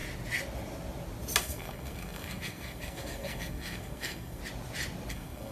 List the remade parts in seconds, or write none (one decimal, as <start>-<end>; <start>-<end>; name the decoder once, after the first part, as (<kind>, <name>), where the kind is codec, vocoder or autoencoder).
1.4-4.4 (codec, SNAC); 5.1-5.5